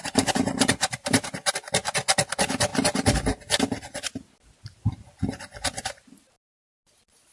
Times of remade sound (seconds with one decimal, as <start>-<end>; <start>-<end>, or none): 0.0-1.5